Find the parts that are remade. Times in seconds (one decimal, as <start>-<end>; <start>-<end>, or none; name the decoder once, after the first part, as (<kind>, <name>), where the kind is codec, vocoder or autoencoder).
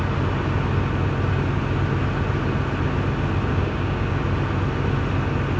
3.5-4.1 (codec, DAC)